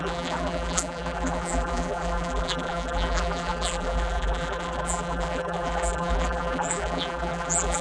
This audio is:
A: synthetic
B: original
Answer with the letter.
A